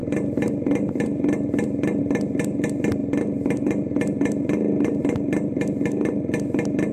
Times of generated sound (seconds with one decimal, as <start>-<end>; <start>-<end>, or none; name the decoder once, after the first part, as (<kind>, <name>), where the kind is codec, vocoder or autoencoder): none